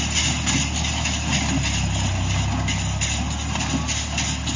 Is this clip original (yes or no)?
yes